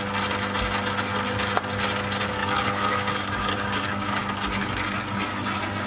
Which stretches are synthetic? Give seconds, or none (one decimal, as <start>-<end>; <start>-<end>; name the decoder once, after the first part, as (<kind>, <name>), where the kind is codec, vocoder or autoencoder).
2.4-4.2 (codec, DAC)